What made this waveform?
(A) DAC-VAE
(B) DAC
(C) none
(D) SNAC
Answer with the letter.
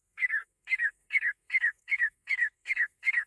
D